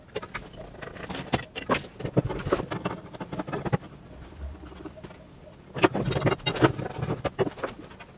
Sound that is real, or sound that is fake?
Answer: real